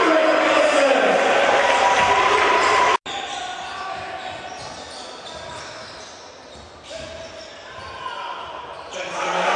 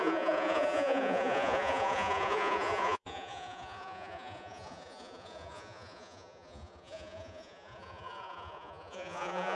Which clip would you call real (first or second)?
first